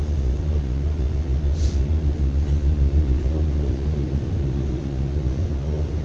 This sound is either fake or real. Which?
fake